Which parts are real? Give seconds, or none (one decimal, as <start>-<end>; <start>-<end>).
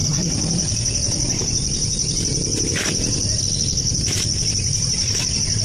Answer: 3.4-3.9